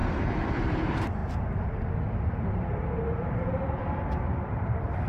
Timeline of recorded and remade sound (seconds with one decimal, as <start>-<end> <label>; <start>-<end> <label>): 0.0-0.5 recorded; 0.5-5.1 remade